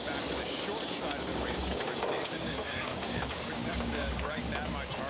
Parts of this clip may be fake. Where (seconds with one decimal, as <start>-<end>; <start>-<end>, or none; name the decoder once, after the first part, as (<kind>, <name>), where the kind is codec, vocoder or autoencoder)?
1.3-4.4 (codec, DAC)